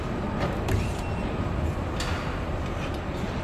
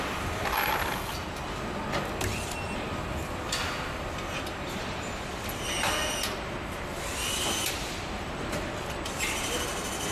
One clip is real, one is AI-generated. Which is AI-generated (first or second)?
first